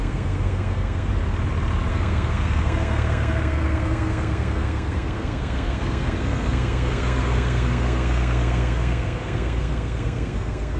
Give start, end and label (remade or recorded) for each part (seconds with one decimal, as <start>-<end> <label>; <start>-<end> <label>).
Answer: 0.0-1.1 remade; 1.1-1.9 recorded; 1.9-10.8 remade